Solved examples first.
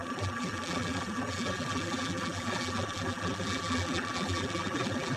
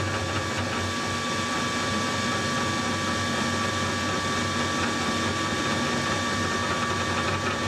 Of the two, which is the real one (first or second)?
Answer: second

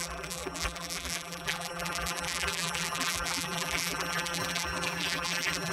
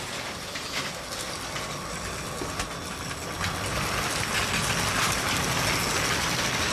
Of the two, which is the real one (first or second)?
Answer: second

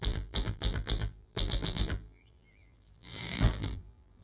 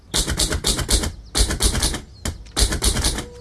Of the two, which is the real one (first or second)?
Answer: second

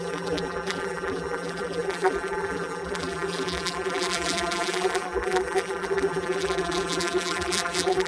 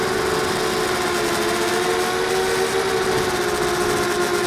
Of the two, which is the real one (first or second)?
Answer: second